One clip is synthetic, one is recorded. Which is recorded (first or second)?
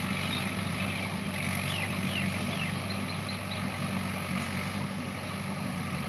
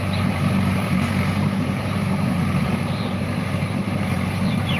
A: first